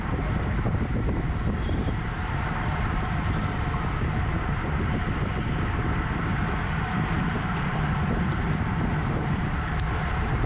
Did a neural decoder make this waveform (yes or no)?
yes